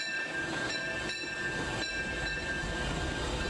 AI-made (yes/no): no